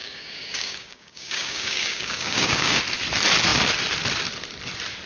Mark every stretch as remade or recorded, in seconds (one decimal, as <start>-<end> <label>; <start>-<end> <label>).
0.0-2.8 remade; 2.8-5.1 recorded